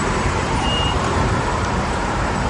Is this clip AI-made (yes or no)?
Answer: yes